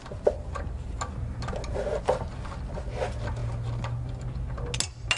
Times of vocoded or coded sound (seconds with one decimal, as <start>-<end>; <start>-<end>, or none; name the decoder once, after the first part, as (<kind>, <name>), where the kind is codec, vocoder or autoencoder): none